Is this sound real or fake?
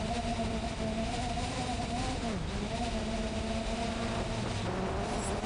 real